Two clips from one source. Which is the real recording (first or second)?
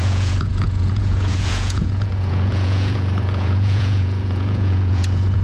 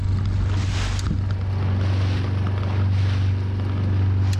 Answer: second